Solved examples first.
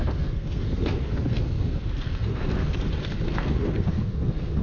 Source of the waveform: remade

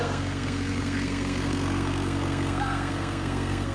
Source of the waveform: remade